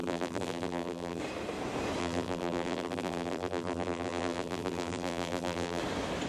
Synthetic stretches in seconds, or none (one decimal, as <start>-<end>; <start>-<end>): 0.0-1.2; 2.0-5.8